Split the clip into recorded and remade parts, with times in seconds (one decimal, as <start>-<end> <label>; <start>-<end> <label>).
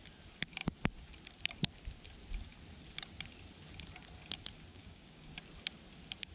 0.0-4.7 recorded; 4.7-5.3 remade; 5.3-6.3 recorded